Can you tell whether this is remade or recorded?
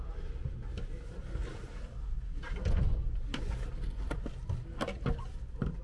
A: recorded